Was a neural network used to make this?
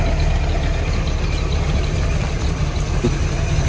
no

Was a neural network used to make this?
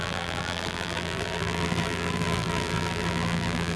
yes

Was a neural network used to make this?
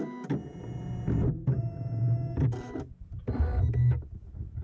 no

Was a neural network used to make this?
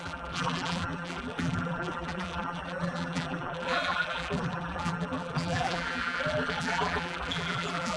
yes